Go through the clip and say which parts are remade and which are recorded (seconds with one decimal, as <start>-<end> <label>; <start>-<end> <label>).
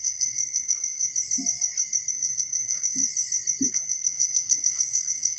0.0-1.0 remade; 1.0-2.1 recorded; 2.1-3.0 remade; 3.0-3.7 recorded; 3.7-5.4 remade